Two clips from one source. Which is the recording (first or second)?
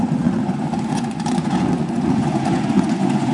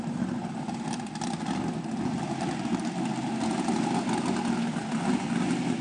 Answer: second